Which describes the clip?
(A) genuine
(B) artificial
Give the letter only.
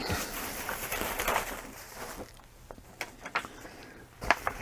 B